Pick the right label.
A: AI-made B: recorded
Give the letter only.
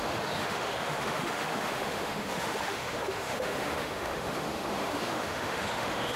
A